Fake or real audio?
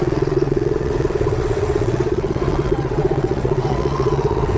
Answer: fake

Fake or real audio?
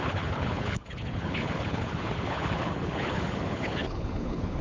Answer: fake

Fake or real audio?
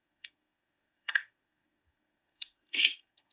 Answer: fake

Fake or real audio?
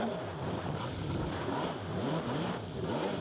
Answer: real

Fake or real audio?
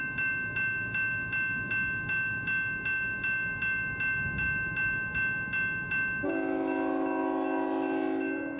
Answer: real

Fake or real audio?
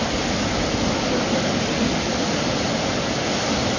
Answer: real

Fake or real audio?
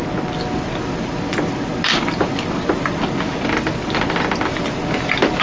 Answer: real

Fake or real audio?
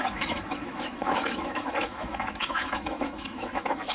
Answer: fake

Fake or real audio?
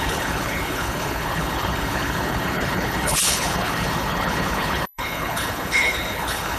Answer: fake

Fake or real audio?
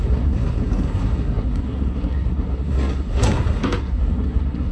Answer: fake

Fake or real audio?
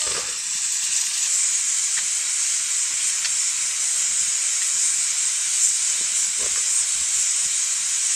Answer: real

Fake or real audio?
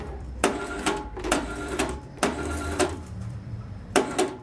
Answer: fake